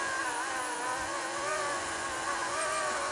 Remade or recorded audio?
remade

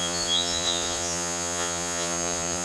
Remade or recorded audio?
remade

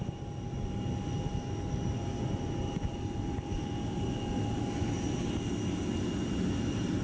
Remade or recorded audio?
recorded